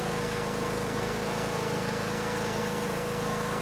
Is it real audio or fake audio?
fake